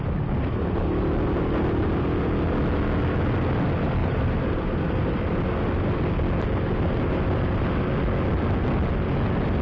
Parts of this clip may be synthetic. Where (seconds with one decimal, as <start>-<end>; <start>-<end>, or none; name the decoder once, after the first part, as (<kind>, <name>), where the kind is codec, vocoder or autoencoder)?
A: 4.0-5.5 (vocoder, BigVGAN v2)